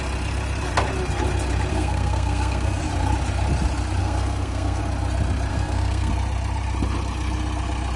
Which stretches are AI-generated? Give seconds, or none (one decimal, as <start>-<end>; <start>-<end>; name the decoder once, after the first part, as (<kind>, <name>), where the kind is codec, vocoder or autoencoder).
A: 1.7-2.8 (codec, SNAC); 4.0-4.8; 5.5-6.1